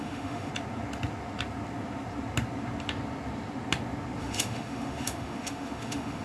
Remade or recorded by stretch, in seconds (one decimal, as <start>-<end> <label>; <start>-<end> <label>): 0.0-0.5 remade; 0.5-4.2 recorded; 4.2-6.2 remade